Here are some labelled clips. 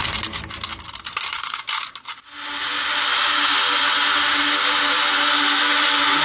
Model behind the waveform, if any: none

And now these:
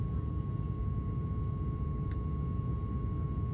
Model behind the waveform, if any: none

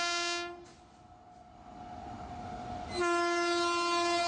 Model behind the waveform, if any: none